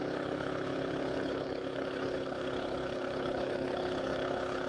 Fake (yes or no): yes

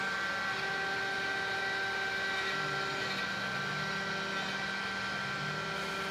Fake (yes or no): no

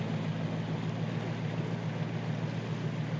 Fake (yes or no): no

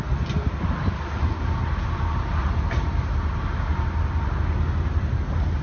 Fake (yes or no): no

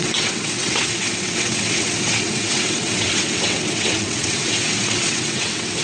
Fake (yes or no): yes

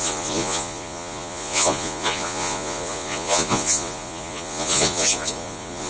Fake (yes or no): yes